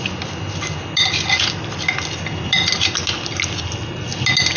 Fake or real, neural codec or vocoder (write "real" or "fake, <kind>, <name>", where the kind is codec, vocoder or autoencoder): real